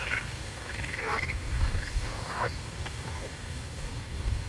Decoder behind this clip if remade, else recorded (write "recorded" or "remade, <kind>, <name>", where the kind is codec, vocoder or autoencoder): remade, codec, DAC